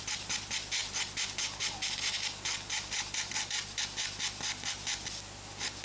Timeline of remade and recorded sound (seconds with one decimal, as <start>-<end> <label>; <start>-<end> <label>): 0.0-5.8 recorded